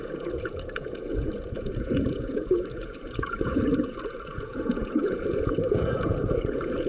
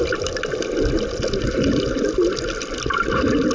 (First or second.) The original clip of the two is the second